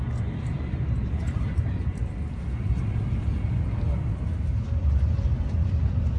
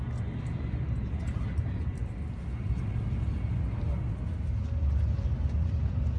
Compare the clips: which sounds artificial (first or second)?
first